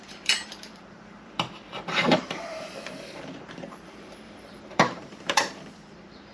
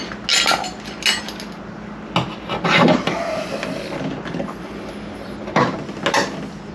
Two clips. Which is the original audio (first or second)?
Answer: second